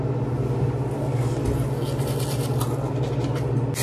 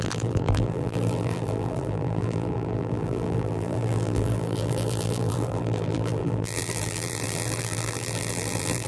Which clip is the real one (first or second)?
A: first